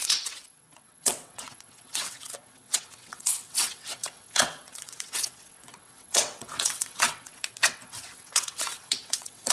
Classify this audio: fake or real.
fake